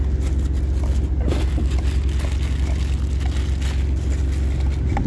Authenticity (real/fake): real